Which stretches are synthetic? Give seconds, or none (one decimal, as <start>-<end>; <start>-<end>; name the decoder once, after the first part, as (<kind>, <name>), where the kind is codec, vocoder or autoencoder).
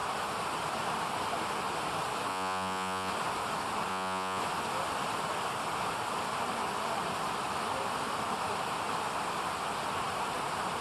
2.3-3.1 (vocoder, Vocos); 3.9-4.4